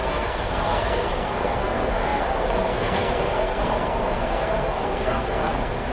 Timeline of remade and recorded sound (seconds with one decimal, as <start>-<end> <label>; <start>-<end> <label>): 0.0-5.9 remade